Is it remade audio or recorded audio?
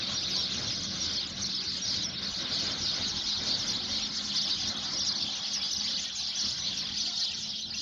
recorded